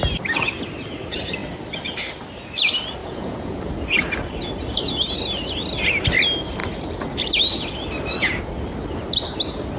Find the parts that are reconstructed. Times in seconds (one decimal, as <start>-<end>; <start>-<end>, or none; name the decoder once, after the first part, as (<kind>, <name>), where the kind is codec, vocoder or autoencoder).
3.0-3.6 (vocoder, Vocos)